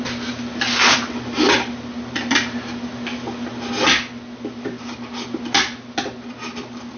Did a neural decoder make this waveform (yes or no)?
no